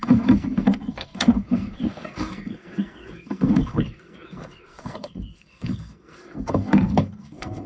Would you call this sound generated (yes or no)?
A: yes